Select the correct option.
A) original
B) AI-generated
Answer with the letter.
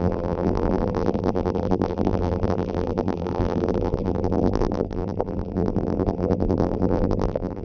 B